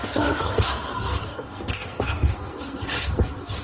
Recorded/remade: remade